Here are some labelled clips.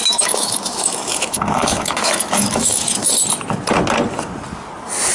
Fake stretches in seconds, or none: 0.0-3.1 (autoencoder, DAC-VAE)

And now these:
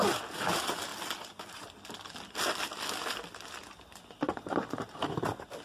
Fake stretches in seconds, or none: none

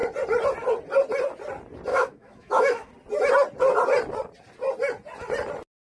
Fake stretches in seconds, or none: 1.9-2.9 (autoencoder, DAC-VAE)

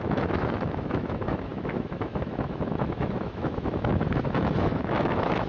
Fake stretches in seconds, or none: 0.0-5.5 (autoencoder, DAC-VAE)